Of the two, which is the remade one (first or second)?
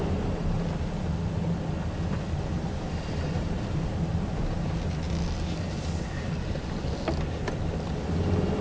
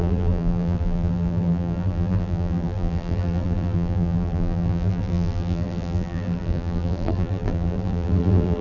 second